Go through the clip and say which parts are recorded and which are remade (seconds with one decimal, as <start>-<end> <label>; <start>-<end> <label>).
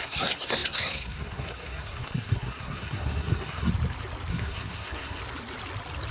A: 0.0-3.7 remade; 3.7-4.3 recorded; 4.3-5.2 remade; 5.2-6.1 recorded